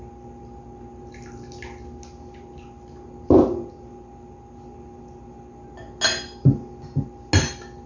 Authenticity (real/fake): real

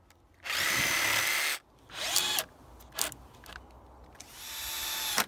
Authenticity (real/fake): real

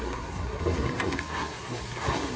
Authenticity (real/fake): fake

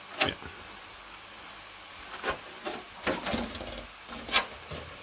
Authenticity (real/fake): real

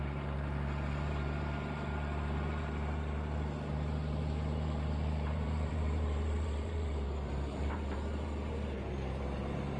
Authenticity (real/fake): fake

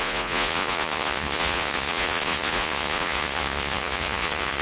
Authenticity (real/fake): fake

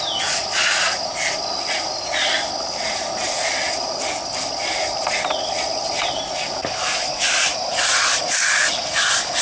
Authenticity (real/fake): real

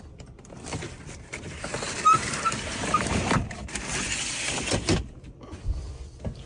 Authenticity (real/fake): fake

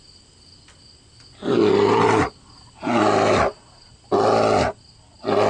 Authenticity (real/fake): real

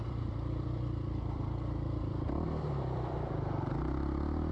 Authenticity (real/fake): fake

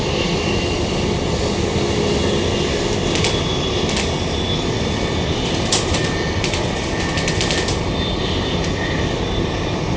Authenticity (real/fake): real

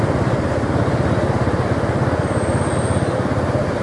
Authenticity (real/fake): real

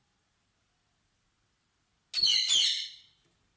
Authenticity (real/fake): real